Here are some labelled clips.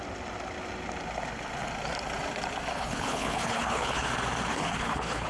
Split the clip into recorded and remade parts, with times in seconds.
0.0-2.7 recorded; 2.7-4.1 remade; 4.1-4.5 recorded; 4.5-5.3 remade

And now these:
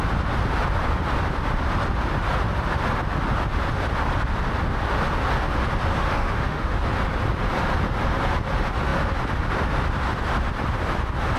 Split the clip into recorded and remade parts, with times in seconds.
0.0-6.0 recorded; 6.0-6.8 remade; 6.8-11.4 recorded

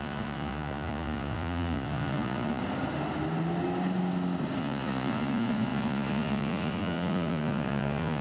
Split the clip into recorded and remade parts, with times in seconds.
0.0-2.6 remade; 2.6-4.6 recorded; 4.6-8.2 remade

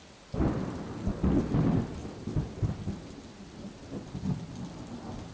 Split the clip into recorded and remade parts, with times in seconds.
0.0-5.3 recorded

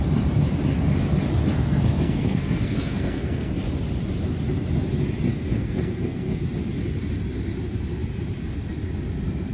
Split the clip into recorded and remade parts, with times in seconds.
0.0-1.5 recorded; 1.5-3.5 remade; 3.5-5.3 recorded; 5.3-6.4 remade; 6.4-9.5 recorded

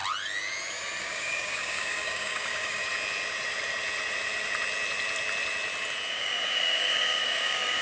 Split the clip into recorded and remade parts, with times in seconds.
0.0-1.0 recorded; 1.0-2.8 remade; 2.8-6.1 recorded; 6.1-7.8 remade

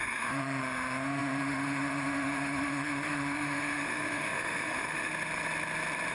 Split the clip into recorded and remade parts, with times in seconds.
0.0-5.1 remade; 5.1-6.1 recorded